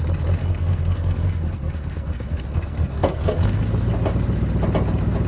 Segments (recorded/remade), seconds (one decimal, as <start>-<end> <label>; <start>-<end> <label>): 0.0-0.4 recorded; 0.4-3.6 remade; 3.6-5.3 recorded